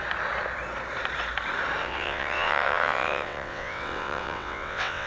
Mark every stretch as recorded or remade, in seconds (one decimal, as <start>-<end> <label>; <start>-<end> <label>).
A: 0.0-1.8 recorded; 1.8-5.1 remade